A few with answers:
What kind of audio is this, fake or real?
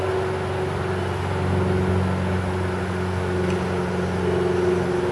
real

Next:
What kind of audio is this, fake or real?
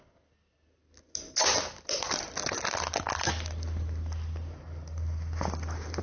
real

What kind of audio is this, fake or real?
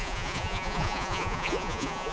fake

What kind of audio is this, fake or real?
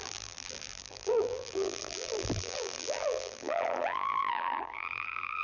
fake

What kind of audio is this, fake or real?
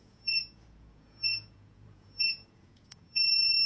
fake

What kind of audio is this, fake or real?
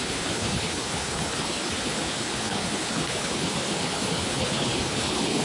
fake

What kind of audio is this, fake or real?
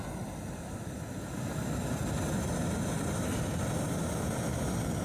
real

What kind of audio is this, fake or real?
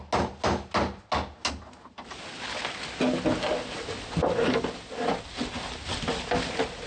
real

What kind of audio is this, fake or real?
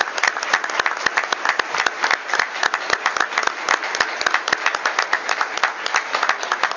real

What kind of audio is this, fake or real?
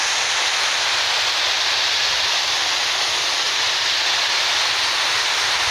real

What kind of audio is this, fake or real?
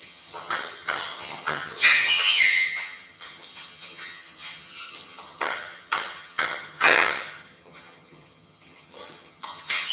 fake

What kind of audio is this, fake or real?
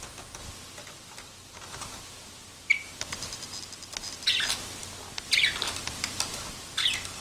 real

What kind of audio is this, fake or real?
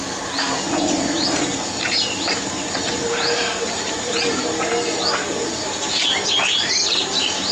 real